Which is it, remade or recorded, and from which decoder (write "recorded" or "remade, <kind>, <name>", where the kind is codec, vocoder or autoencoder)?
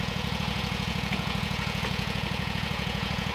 remade, vocoder, Vocos